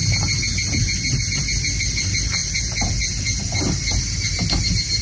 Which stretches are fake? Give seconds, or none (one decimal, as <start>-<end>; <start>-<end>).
none